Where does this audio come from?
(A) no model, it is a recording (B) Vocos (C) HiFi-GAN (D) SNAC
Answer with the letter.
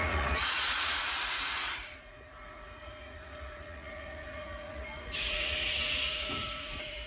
B